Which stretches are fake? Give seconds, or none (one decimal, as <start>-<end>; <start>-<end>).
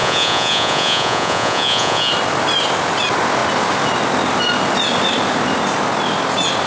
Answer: 0.0-2.1